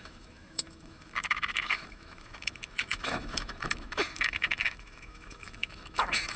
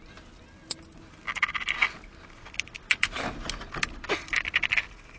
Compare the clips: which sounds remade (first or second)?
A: first